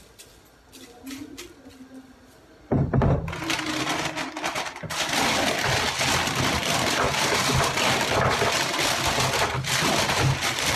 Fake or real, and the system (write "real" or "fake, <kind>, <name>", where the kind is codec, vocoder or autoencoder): real